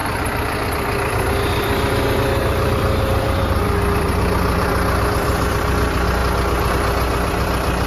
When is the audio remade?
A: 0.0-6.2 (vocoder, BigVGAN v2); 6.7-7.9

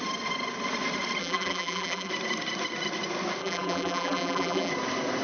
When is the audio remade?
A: 1.2-2.1 (vocoder, BigVGAN v2); 3.4-4.7